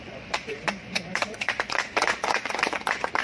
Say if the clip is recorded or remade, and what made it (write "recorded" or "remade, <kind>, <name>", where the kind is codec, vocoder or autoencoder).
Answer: remade, vocoder, Vocos